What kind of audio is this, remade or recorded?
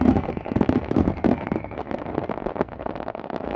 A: remade